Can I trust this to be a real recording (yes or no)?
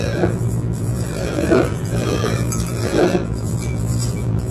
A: no